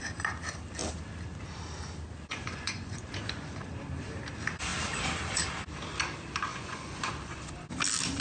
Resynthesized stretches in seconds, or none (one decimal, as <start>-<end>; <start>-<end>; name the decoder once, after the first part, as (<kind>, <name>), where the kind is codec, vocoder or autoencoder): 2.3-3.7 (vocoder, Vocos); 6.5-7.4